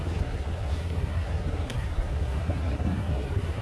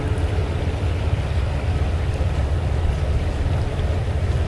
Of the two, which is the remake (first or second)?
first